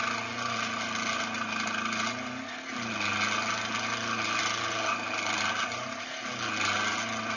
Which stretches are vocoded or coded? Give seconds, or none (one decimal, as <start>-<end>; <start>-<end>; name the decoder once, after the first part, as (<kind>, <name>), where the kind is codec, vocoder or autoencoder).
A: none